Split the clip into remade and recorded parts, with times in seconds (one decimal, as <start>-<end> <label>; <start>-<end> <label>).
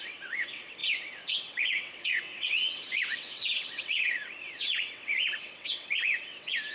0.0-6.7 remade